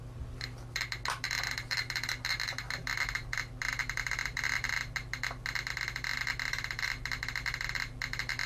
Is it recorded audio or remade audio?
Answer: recorded